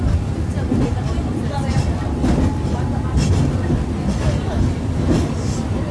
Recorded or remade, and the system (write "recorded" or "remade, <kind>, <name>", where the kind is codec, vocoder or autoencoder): recorded